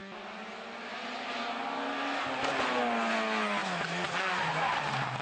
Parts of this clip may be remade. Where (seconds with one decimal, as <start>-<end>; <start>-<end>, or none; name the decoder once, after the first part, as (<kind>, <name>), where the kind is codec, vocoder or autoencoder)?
none